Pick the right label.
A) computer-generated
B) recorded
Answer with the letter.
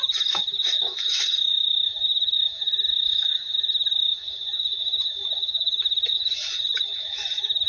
A